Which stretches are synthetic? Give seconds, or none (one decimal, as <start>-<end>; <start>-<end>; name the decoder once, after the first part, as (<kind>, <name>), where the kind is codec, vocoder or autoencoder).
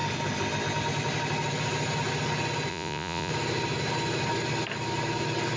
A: 2.7-3.3 (vocoder, Vocos)